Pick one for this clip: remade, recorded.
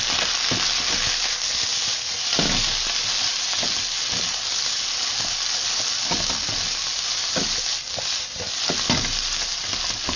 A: recorded